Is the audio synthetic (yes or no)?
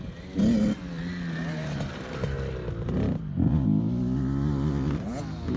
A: no